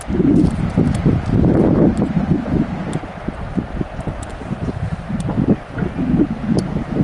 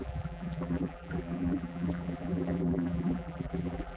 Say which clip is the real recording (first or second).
first